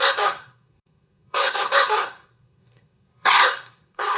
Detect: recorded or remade remade